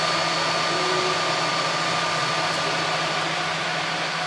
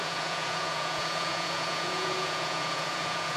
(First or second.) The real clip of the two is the first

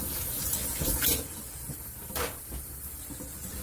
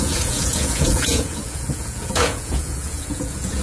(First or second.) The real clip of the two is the first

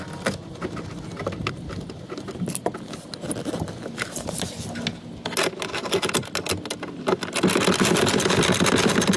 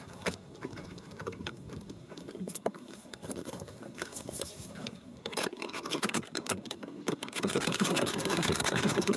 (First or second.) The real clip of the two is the first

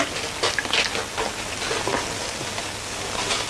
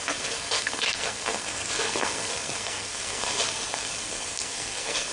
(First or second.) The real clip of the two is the first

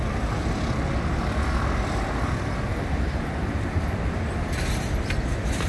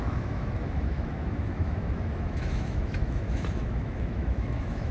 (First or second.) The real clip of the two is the first